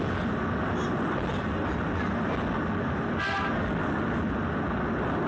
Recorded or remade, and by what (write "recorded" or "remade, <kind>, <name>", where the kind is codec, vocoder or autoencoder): recorded